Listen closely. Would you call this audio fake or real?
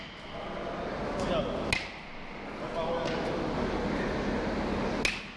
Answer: real